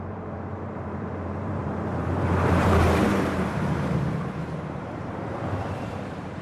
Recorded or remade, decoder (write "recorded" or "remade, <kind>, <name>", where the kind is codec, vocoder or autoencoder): remade, vocoder, BigVGAN v2